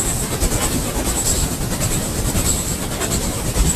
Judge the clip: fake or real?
real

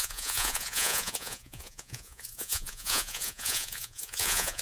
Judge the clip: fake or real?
fake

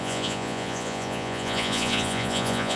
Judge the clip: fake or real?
fake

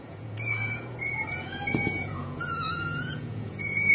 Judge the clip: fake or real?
fake